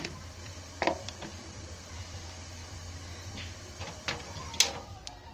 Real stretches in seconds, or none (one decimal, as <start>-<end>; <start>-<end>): 0.0-5.3